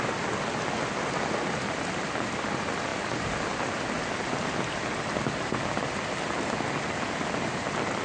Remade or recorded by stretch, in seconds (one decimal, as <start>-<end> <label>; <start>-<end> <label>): 0.0-8.0 recorded